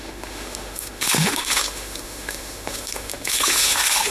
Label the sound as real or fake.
fake